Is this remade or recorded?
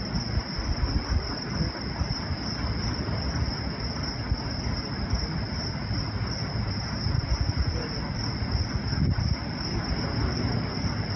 recorded